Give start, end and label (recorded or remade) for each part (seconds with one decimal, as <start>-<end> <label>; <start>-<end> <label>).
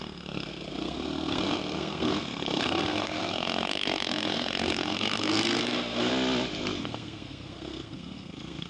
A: 0.0-6.1 remade; 6.1-6.8 recorded; 6.8-8.7 remade